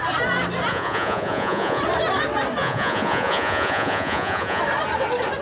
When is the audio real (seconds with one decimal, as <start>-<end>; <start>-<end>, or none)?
0.0-0.7; 1.8-2.6; 4.6-5.4